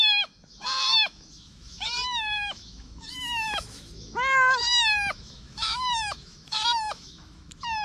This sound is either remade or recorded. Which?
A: remade